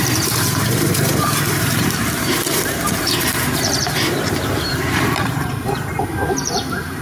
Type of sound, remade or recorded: remade